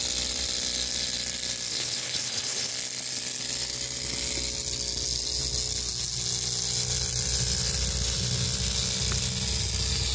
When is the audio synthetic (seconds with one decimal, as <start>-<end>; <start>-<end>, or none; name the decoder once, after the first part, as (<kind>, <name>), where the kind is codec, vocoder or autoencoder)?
1.7-2.7 (codec, HILCodec)